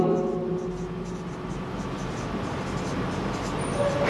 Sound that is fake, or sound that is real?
real